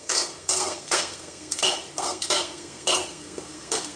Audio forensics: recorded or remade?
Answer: remade